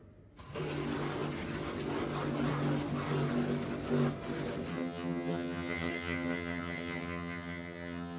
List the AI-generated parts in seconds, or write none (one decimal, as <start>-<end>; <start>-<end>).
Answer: 4.7-8.2